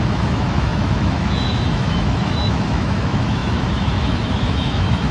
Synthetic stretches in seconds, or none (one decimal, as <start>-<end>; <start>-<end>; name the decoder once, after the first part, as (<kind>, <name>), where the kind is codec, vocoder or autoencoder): 0.0-5.1 (autoencoder, DAC-VAE)